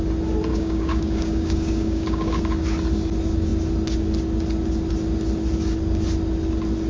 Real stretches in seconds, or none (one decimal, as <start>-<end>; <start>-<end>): 0.0-0.5; 2.4-6.9